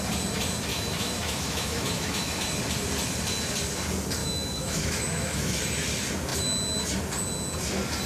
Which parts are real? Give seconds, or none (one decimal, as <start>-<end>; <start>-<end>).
0.0-0.7; 2.4-4.2; 5.6-8.1